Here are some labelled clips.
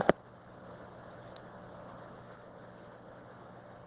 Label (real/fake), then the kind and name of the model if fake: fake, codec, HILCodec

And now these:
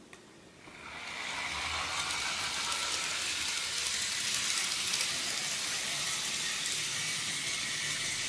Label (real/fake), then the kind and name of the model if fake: real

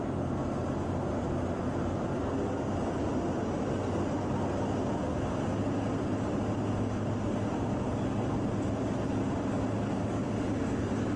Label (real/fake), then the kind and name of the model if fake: real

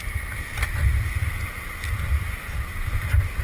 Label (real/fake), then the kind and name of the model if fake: real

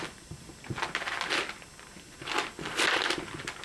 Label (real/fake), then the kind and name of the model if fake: real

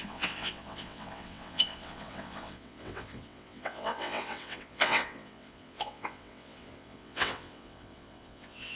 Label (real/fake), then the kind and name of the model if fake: fake, vocoder, WaveNeXt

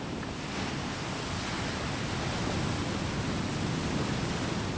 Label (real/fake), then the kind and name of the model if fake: real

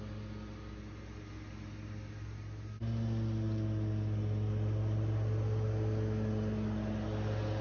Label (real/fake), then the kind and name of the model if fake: real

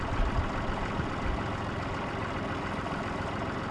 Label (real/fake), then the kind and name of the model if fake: real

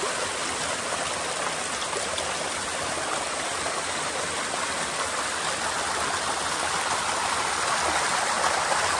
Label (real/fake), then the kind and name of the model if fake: real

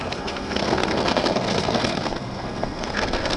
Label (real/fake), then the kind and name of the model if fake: fake, codec, SNAC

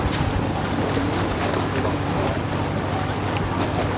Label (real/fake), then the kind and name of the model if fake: real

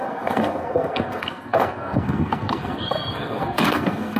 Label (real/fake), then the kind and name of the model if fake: fake, codec, SNAC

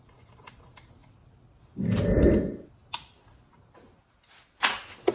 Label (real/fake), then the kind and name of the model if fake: real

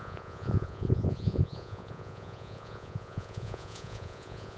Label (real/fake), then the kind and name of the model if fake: fake, vocoder, Vocos